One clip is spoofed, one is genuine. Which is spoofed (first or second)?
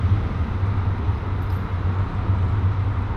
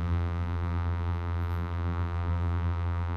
second